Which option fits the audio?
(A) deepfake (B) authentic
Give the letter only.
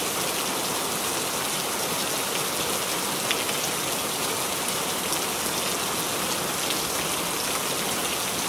B